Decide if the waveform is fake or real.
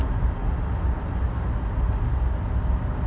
real